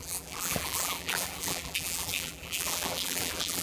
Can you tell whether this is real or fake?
fake